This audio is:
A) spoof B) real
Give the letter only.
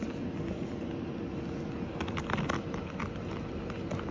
B